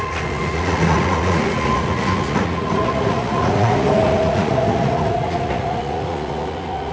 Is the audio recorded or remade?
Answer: remade